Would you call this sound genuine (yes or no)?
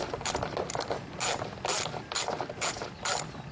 yes